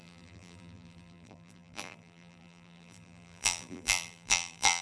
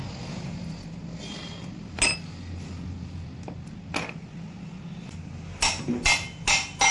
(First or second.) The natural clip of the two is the second